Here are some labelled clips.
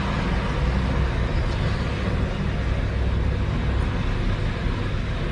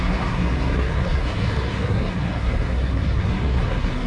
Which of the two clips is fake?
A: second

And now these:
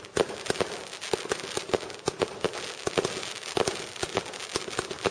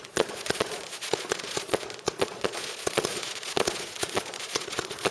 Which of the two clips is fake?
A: second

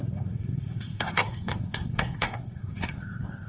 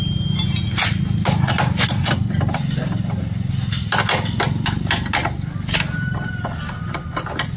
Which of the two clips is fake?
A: first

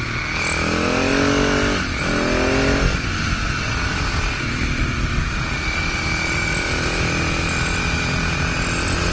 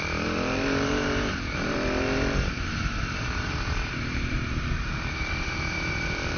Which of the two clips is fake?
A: second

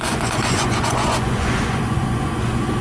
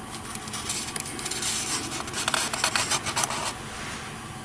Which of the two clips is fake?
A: first